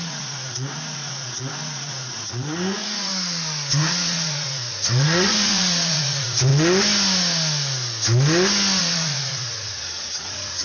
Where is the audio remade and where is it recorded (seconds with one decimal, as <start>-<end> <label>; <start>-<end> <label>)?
0.0-3.1 remade; 3.1-3.7 recorded; 3.7-6.5 remade; 6.5-8.8 recorded; 8.8-10.6 remade